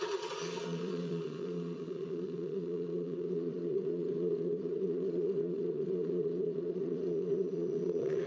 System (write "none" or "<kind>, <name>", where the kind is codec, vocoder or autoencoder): vocoder, Vocos